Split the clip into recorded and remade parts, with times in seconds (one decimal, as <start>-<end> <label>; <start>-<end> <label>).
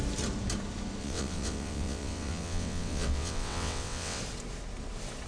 0.0-1.0 recorded; 1.0-4.2 remade; 4.2-5.3 recorded